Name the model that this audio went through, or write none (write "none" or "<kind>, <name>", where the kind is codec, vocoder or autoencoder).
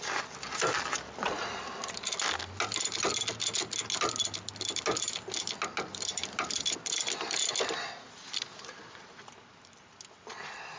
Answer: none